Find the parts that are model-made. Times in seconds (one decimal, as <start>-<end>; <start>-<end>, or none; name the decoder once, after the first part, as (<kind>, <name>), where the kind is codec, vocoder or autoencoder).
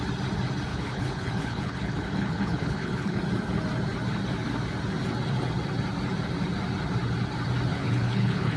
0.7-3.2 (codec, HILCodec); 7.7-8.6